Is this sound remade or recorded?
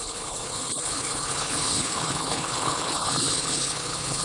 remade